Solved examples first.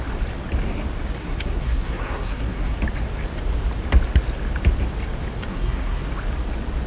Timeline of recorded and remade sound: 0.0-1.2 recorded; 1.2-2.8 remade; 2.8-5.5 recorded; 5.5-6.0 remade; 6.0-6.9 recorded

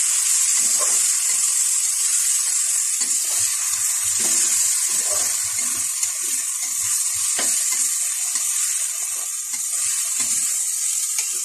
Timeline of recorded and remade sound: 0.0-9.4 recorded; 9.4-10.6 remade; 10.6-11.4 recorded